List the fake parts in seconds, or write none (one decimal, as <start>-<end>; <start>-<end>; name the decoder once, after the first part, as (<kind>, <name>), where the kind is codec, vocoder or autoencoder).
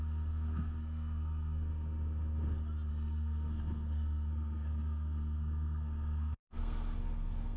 0.0-1.7 (codec, SNAC); 2.9-7.6